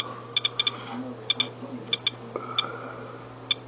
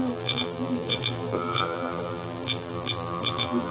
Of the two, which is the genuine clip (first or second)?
first